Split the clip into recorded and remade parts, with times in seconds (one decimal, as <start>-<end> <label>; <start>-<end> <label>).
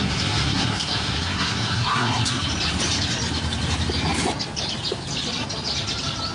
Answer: 0.0-2.5 remade; 2.5-6.3 recorded